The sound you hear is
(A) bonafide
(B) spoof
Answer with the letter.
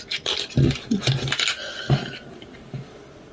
A